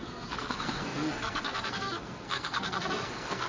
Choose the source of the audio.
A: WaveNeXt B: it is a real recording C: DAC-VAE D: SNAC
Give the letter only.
D